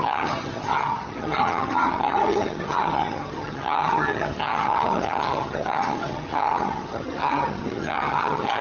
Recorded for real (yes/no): no